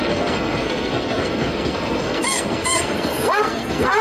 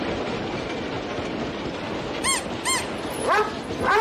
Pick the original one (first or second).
second